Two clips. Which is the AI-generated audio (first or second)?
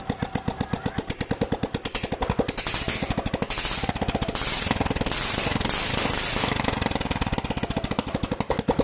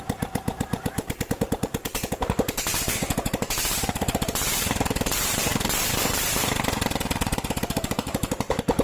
second